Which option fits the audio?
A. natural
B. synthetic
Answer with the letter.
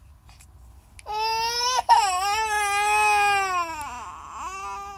A